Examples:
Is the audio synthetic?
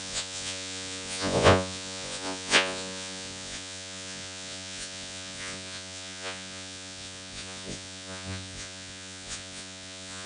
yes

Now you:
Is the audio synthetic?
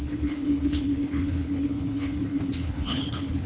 yes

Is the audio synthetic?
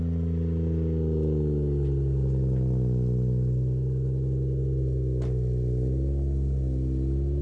no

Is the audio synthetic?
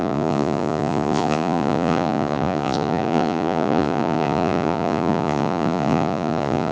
yes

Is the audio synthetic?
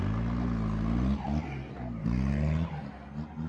no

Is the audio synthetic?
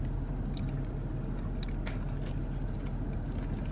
no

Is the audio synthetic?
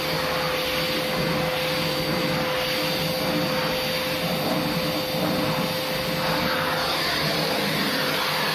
no